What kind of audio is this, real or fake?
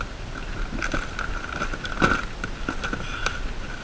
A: real